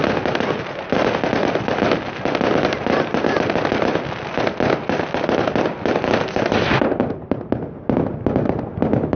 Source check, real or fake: real